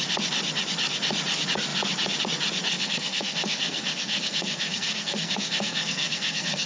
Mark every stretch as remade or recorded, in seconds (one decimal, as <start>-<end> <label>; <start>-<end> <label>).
0.0-2.7 recorded; 2.7-6.7 remade